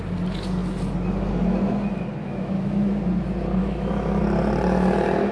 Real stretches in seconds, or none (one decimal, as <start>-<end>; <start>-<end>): 0.0-2.2; 2.9-3.6; 4.2-5.3